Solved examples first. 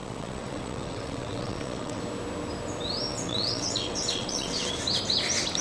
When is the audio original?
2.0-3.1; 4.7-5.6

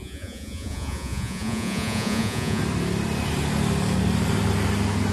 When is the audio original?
2.6-5.1

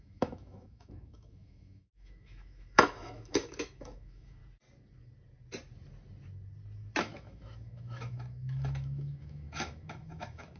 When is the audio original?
4.4-7.0

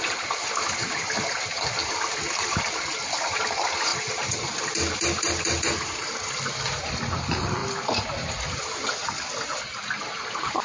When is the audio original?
0.0-1.8; 3.4-3.9; 6.9-10.6

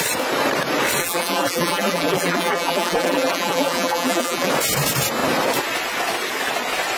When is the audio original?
0.0-1.0; 4.5-7.0

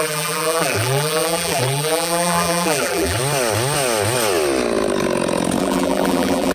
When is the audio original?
3.2-5.6

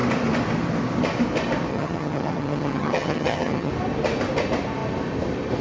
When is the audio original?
0.0-1.7; 3.7-5.6